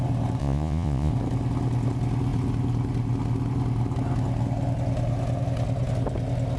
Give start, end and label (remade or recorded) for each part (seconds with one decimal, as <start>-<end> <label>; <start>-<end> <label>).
0.0-0.4 recorded; 0.4-1.1 remade; 1.1-6.6 recorded